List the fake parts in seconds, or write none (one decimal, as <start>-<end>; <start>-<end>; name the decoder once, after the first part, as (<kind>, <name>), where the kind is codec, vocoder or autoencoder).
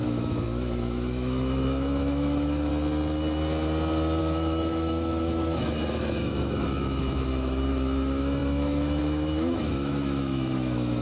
0.0-2.7 (autoencoder, DAC-VAE); 4.2-11.0